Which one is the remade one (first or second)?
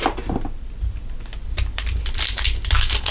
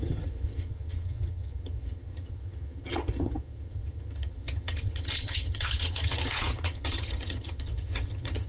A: second